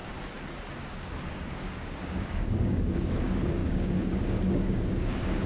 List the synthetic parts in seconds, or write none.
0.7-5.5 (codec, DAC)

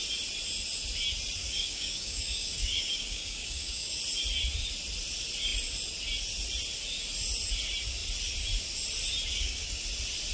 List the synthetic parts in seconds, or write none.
1.4-4.0 (codec, DAC); 9.3-9.8

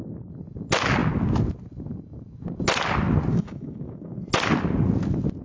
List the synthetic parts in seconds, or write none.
3.3-4.3 (codec, DAC)

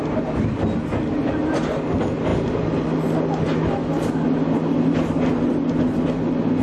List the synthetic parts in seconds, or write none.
none

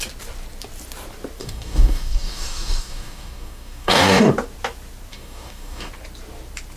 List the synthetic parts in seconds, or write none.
1.4-4.3 (codec, DAC); 5.1-5.9

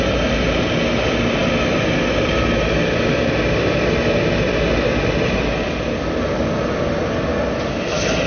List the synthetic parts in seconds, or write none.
none